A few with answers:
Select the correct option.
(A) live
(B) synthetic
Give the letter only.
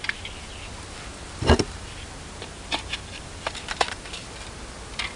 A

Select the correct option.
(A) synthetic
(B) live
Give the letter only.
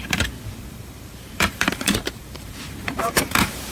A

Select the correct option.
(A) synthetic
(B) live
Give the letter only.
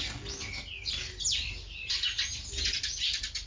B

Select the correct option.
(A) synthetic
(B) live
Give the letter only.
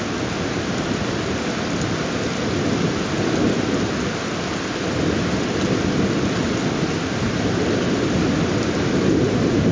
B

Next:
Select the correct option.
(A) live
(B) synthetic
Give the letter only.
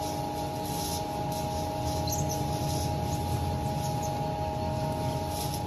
A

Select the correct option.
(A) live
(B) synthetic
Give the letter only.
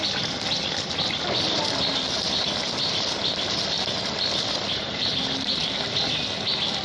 A